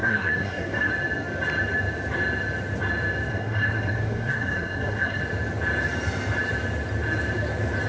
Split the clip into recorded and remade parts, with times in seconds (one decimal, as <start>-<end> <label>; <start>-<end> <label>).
0.0-0.9 remade; 0.9-3.3 recorded; 3.3-5.2 remade; 5.2-7.9 recorded